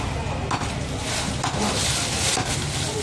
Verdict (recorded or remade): recorded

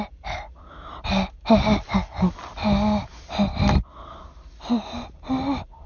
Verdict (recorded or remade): recorded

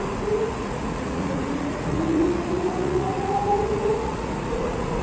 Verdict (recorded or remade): remade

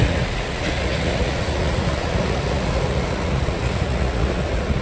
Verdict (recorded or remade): remade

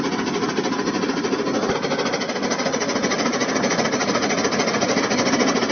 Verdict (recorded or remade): recorded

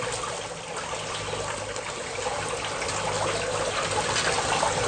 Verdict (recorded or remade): recorded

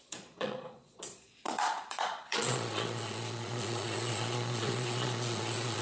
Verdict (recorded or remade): remade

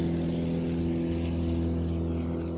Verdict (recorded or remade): recorded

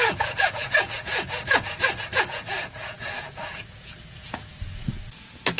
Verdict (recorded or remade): remade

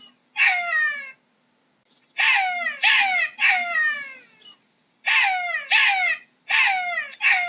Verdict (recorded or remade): recorded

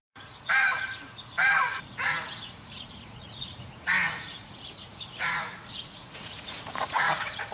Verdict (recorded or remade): remade